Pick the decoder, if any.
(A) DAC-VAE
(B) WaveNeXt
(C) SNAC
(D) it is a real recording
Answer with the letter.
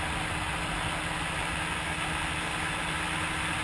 D